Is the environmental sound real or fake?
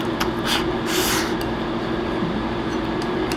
real